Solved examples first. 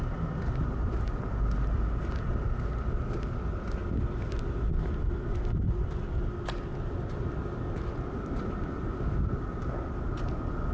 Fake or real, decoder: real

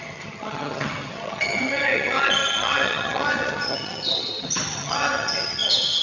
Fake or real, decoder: fake, vocoder, HiFi-GAN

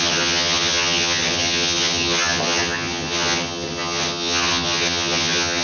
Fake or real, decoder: fake, vocoder, HiFi-GAN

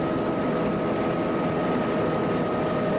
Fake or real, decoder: real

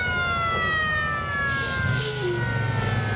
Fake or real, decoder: real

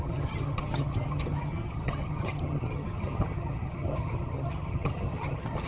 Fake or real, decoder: fake, vocoder, HiFi-GAN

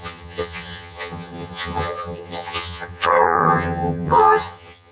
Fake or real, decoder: fake, vocoder, HiFi-GAN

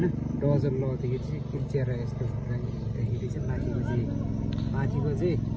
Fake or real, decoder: real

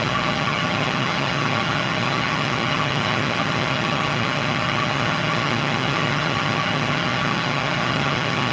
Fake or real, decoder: fake, vocoder, HiFi-GAN